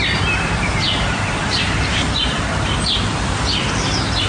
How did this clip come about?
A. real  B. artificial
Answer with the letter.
A